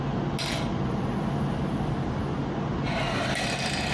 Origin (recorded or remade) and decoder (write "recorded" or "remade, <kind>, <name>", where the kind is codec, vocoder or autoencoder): recorded